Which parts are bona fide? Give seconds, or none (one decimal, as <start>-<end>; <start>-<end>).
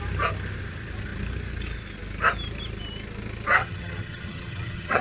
0.0-3.6